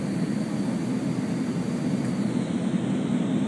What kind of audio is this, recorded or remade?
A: recorded